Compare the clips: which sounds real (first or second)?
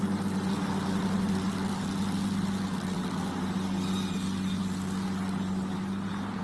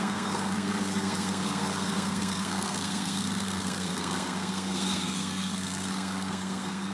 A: first